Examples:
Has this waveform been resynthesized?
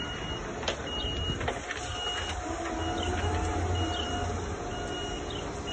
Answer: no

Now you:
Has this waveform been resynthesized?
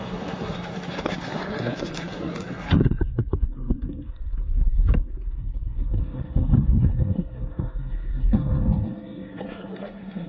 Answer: yes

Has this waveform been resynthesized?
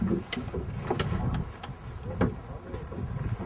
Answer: no